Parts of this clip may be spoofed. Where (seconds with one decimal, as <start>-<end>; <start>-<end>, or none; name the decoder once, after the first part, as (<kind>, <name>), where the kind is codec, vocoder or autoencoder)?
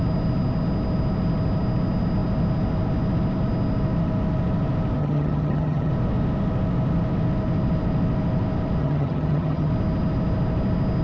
5.0-5.9 (vocoder, HiFi-GAN); 8.8-9.7